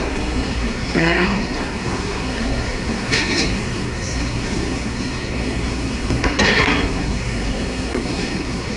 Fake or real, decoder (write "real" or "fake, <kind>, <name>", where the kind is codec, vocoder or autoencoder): fake, codec, SNAC